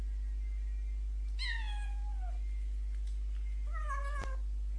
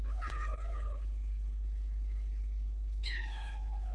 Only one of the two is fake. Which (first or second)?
second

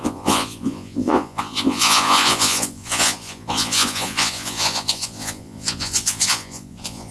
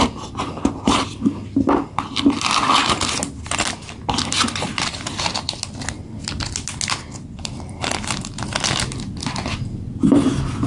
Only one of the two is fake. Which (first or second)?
first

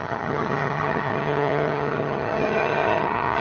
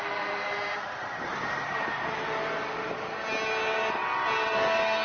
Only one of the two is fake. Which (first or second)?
first